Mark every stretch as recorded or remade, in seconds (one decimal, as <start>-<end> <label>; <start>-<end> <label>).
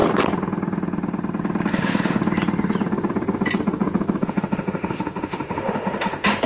0.0-1.7 recorded; 1.7-2.2 remade; 2.2-4.2 recorded; 4.2-6.5 remade